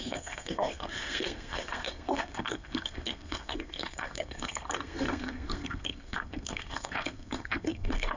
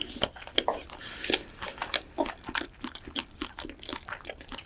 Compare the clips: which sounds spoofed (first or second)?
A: first